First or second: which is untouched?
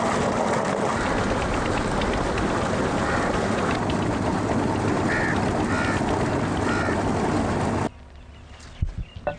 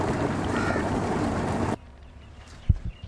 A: first